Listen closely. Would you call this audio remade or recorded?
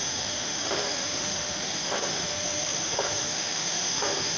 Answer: remade